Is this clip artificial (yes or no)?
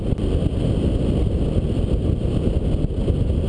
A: no